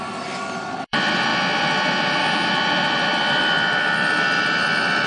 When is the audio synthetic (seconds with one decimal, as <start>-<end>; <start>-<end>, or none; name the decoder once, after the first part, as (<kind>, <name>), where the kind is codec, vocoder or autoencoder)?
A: 0.0-1.3 (vocoder, BigVGAN v2); 2.2-5.1